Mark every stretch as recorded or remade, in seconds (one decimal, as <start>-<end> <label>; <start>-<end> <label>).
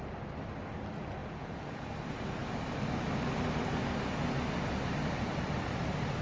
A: 0.0-1.2 recorded; 1.2-1.9 remade; 1.9-6.2 recorded